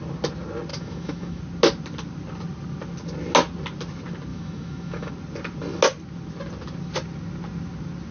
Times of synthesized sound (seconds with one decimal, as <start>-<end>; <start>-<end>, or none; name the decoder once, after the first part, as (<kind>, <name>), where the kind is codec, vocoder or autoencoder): 0.7-1.4 (autoencoder, DAC-VAE); 4.3-5.1